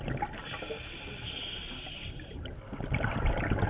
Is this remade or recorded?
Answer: recorded